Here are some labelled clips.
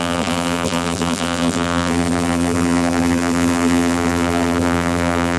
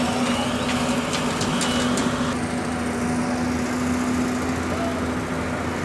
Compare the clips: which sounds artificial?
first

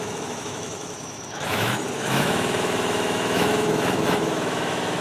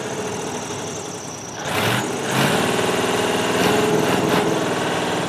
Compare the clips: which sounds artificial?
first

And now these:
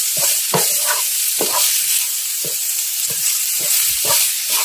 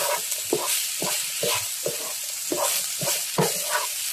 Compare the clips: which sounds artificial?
first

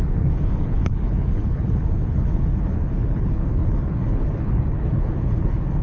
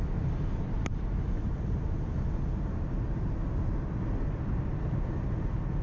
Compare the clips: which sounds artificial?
first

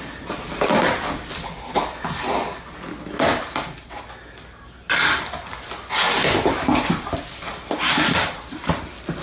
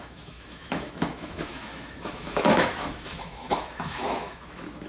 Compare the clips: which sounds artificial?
second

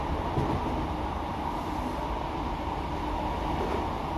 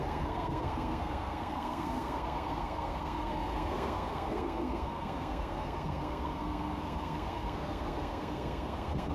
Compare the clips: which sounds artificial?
second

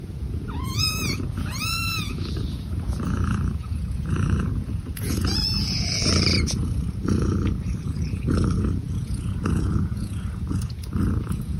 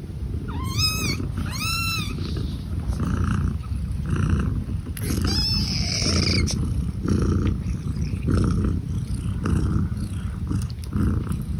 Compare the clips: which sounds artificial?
first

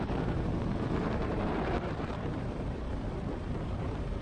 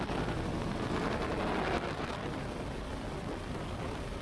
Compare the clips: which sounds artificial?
first